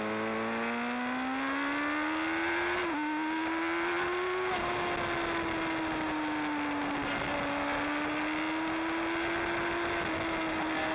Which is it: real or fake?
real